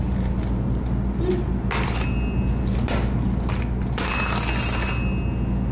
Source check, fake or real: real